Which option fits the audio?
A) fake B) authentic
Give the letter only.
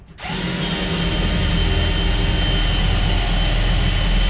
B